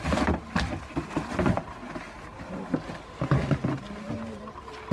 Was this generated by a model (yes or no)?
no